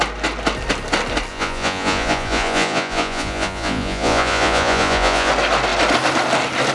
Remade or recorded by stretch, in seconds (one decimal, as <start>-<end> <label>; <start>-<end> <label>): 0.0-1.3 recorded; 1.3-5.3 remade; 5.3-6.7 recorded